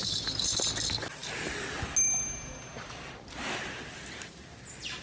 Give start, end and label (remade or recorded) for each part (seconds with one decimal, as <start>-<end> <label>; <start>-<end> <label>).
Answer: 0.0-5.0 recorded